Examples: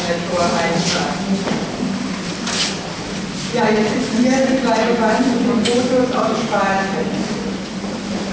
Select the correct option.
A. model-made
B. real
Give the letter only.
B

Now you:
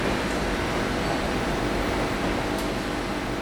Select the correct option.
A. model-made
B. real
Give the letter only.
A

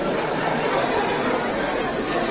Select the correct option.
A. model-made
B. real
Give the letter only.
B